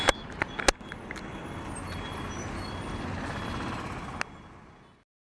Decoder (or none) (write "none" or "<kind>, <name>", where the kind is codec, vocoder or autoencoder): none